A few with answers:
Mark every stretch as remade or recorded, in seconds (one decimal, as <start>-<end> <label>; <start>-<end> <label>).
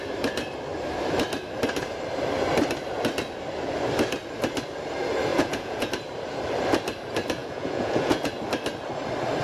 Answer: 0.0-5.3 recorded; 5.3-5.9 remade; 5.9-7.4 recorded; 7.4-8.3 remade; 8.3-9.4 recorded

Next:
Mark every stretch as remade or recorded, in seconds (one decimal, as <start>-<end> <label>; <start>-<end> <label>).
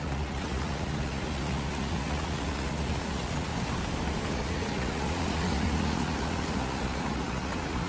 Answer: 0.0-3.5 remade; 3.5-4.3 recorded; 4.3-7.9 remade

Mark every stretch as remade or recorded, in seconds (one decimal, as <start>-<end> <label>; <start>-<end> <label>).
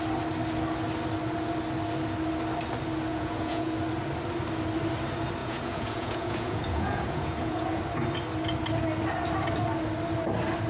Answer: 0.0-3.1 recorded; 3.1-3.7 remade; 3.7-5.4 recorded; 5.4-7.8 remade; 7.8-10.7 recorded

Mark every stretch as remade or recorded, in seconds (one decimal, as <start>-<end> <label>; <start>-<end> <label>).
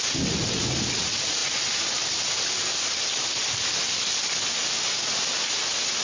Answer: 0.0-6.0 recorded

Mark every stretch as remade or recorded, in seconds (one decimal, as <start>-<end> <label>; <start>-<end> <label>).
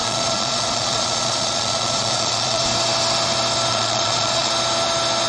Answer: 0.0-2.6 remade; 2.6-3.7 recorded; 3.7-4.5 remade; 4.5-5.3 recorded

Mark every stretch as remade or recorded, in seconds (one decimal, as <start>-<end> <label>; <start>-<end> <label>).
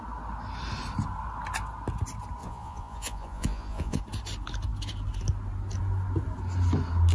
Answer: 0.0-2.4 recorded; 2.4-4.0 remade; 4.0-7.1 recorded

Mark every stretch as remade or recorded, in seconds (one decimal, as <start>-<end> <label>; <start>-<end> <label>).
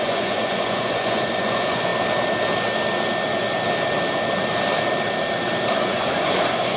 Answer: 0.0-1.9 remade; 1.9-5.8 recorded; 5.8-6.8 remade